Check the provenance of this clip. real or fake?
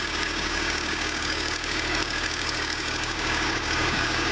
fake